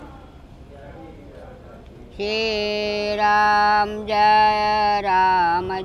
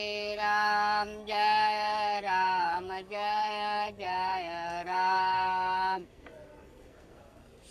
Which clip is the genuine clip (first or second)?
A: first